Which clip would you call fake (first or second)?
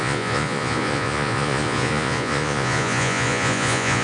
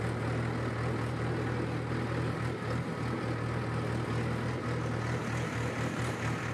first